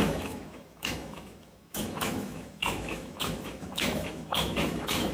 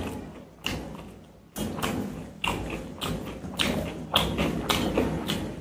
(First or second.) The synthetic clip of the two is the first